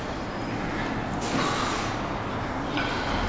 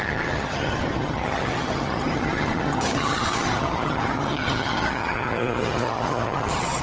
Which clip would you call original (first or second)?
first